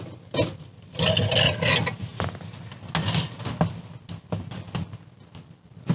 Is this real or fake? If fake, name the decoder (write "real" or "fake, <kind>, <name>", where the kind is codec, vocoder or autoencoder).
real